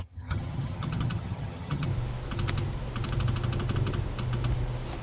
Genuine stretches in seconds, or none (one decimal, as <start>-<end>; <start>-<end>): 1.9-5.0